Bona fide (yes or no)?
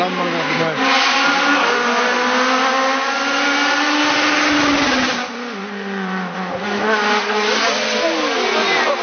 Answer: yes